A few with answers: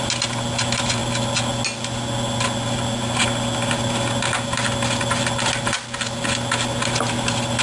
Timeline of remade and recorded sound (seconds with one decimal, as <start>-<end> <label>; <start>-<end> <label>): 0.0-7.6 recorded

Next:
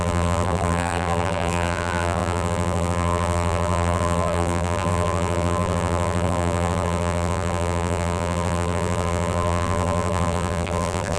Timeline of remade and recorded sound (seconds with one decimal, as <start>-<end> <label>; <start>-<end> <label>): 0.0-11.2 remade

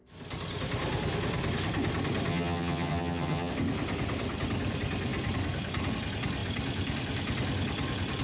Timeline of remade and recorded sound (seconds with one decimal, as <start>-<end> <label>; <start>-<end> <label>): 0.0-2.3 recorded; 2.3-3.5 remade; 3.5-8.2 recorded

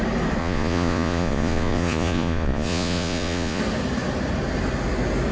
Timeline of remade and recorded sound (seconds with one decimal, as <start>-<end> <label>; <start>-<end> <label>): 0.0-0.4 recorded; 0.4-3.6 remade; 3.6-5.3 recorded

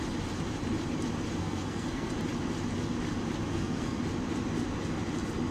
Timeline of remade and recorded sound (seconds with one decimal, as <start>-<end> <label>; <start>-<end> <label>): 0.0-1.4 recorded; 1.4-2.1 remade; 2.1-3.5 recorded; 3.5-4.0 remade; 4.0-5.5 recorded